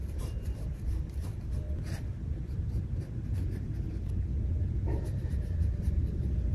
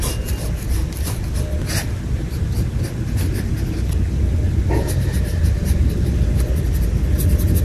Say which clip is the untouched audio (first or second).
second